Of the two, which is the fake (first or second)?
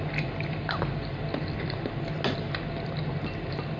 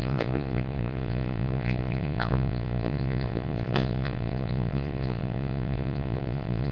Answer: second